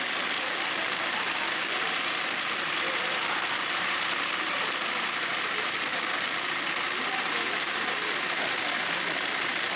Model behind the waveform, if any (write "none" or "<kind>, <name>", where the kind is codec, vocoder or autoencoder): vocoder, BigVGAN v2